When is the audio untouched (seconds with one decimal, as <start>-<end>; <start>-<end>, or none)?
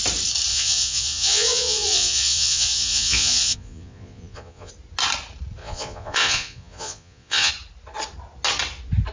0.0-0.5; 4.7-5.6; 7.5-9.1